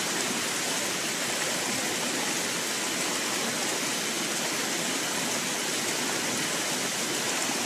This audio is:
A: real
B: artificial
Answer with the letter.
A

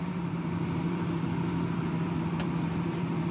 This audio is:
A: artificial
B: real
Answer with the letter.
A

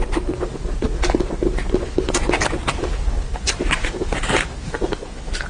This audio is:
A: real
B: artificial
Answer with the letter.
A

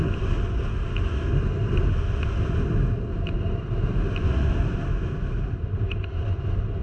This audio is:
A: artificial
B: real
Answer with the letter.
B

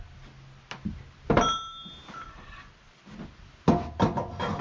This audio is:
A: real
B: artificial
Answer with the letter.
A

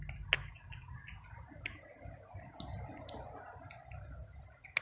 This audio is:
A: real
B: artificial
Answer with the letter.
A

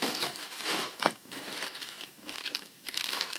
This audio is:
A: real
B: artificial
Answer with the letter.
B